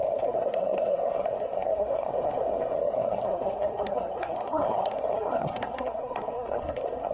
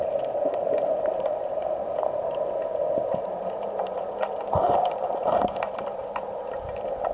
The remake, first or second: first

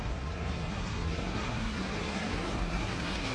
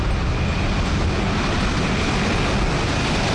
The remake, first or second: first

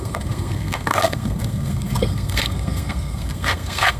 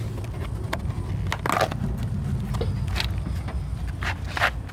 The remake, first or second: first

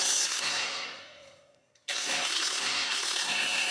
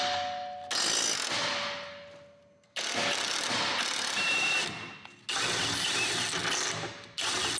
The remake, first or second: first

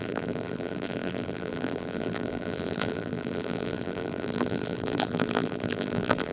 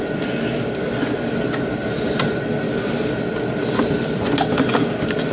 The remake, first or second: first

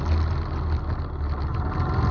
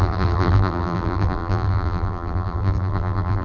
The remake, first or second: second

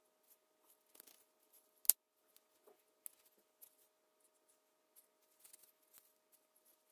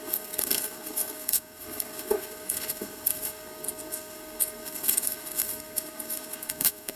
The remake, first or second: second